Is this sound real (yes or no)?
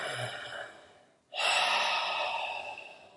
yes